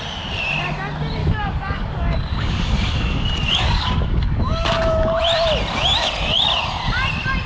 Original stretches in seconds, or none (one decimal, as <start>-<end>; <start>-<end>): 0.0-1.2; 5.2-7.5